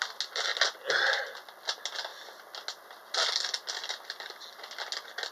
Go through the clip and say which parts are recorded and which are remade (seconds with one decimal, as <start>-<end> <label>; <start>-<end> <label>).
0.0-5.3 recorded